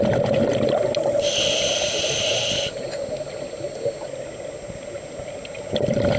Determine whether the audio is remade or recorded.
recorded